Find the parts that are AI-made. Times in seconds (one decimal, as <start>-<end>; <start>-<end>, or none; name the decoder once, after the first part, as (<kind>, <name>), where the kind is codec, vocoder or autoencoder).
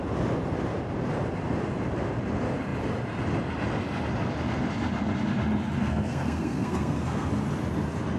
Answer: 5.8-7.3 (codec, SNAC)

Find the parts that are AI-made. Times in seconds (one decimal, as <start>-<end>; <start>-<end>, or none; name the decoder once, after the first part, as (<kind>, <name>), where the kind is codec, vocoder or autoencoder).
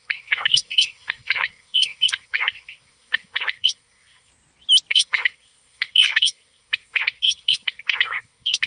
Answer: 0.0-4.3 (codec, SNAC); 4.9-8.7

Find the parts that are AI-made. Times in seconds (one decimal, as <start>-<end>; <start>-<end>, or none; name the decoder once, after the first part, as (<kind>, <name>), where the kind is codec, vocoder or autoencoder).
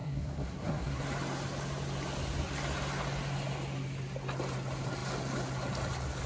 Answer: 0.0-1.0 (codec, SNAC)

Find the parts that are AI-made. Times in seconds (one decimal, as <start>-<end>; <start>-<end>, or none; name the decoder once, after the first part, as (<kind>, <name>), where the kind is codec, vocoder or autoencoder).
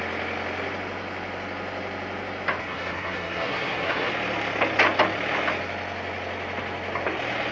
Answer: 2.6-4.1 (codec, SNAC)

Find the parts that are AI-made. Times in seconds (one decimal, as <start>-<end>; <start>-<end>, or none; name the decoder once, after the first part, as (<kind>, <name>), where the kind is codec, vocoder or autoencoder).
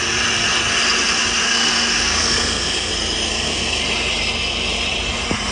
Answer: 1.4-2.9 (codec, SNAC); 3.3-3.8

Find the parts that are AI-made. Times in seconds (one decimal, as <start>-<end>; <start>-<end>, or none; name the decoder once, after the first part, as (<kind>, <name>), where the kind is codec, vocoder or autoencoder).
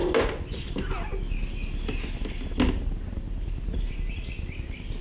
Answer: none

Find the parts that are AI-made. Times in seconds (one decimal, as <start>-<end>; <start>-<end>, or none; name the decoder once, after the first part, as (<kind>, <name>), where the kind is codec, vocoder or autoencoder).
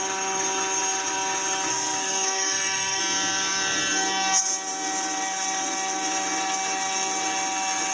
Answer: 1.7-3.0 (codec, SNAC)